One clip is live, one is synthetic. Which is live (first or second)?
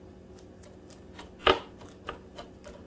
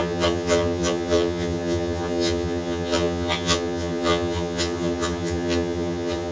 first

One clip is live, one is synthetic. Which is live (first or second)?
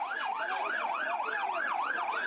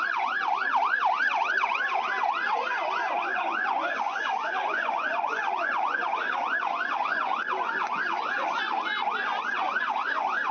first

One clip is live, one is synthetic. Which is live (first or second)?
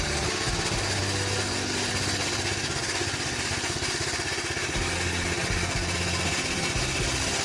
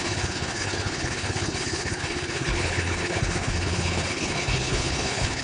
first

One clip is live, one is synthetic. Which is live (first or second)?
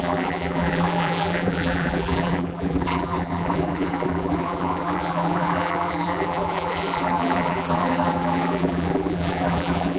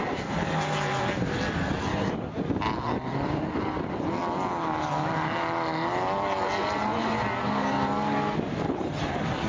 second